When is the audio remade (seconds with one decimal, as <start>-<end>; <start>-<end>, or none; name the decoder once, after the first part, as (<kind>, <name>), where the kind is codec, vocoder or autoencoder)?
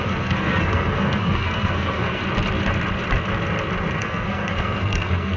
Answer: 0.0-2.2 (codec, SNAC); 4.0-5.4